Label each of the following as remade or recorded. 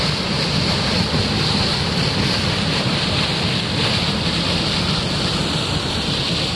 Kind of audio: recorded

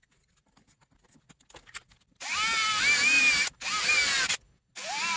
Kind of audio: recorded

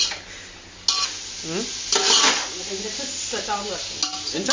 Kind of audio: recorded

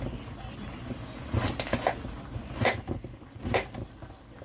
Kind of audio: recorded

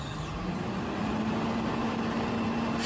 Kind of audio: recorded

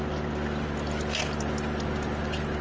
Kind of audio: recorded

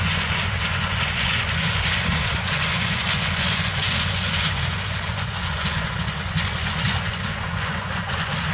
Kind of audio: remade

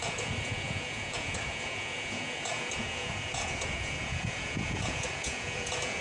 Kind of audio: remade